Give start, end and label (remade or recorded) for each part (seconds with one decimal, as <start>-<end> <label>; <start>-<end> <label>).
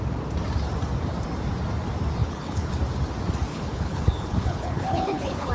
0.0-2.2 recorded; 2.2-2.7 remade; 2.7-3.5 recorded; 3.5-5.5 remade